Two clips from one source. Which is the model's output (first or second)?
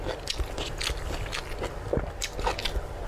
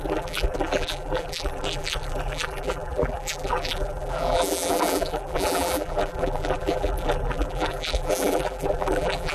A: second